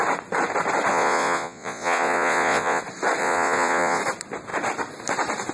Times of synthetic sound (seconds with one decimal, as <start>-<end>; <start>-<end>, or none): 0.9-2.8; 3.2-4.0